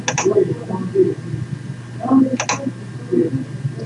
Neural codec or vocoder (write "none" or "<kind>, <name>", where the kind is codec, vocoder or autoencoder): none